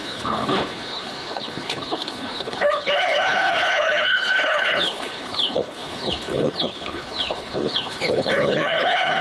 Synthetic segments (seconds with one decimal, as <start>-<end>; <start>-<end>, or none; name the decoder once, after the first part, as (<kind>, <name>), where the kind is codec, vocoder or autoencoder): 0.0-9.2 (codec, HILCodec)